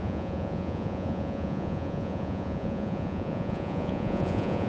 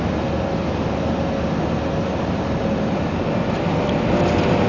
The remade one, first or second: first